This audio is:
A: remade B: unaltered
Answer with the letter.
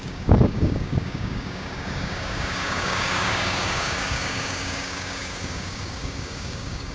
A